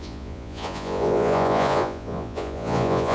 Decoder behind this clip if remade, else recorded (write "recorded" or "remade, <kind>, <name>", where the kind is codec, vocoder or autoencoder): remade, vocoder, Vocos